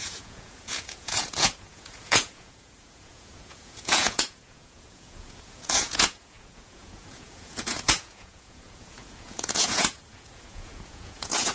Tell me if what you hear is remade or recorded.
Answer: remade